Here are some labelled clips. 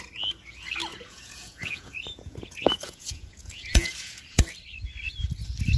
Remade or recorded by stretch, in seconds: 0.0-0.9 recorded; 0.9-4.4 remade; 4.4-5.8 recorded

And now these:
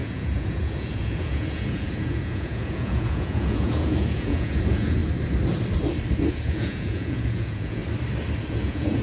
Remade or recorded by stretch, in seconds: 0.0-5.0 remade; 5.0-6.3 recorded; 6.3-7.8 remade; 7.8-8.5 recorded; 8.5-9.0 remade

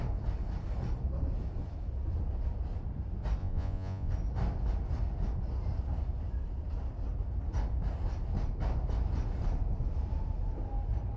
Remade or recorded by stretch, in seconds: 0.0-3.4 recorded; 3.4-4.1 remade; 4.1-11.2 recorded

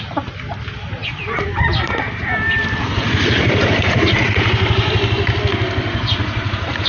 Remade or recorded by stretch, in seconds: 0.0-2.8 recorded; 2.8-4.5 remade; 4.5-6.0 recorded; 6.0-6.9 remade

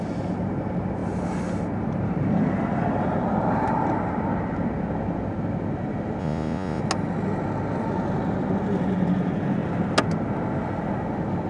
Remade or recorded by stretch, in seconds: 0.0-6.2 recorded; 6.2-6.8 remade; 6.8-11.5 recorded

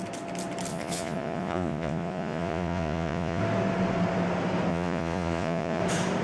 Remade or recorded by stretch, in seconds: 0.0-0.7 recorded; 0.7-3.4 remade; 3.4-4.7 recorded; 4.7-5.8 remade; 5.8-6.2 recorded

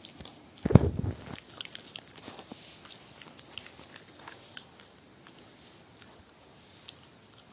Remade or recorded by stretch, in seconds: 0.0-7.5 recorded